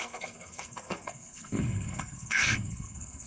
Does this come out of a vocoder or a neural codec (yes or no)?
yes